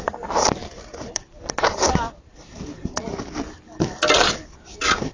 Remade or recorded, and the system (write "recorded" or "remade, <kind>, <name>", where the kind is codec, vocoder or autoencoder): recorded